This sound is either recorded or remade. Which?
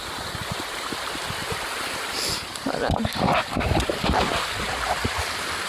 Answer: recorded